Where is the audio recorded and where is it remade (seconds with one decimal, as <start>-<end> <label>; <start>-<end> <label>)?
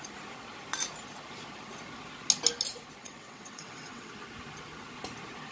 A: 0.0-3.0 recorded; 3.0-4.1 remade; 4.1-5.5 recorded